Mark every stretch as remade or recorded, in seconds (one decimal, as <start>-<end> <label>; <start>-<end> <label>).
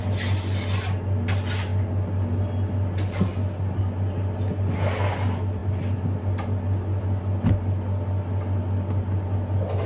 0.0-9.9 recorded